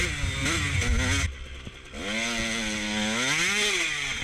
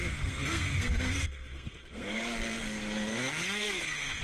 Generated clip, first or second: second